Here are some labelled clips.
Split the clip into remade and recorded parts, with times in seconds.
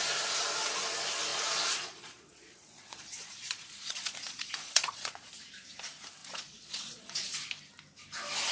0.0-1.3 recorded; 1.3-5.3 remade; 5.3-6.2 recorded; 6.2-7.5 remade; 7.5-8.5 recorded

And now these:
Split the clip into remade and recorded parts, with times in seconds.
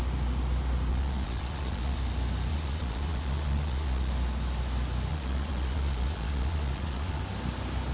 0.0-0.9 recorded; 0.9-2.0 remade; 2.0-2.5 recorded; 2.5-4.1 remade; 4.1-5.1 recorded; 5.1-7.2 remade; 7.2-7.9 recorded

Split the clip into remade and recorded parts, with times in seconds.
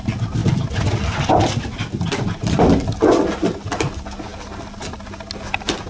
0.0-5.9 recorded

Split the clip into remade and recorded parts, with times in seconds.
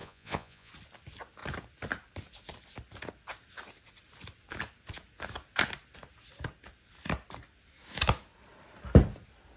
0.0-0.7 remade; 0.7-9.6 recorded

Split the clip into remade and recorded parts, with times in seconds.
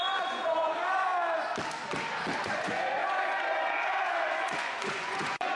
0.0-1.1 remade; 1.1-2.4 recorded; 2.4-5.6 remade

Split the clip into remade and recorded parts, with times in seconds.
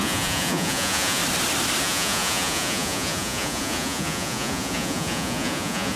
0.0-1.2 remade; 1.2-1.8 recorded; 1.8-6.0 remade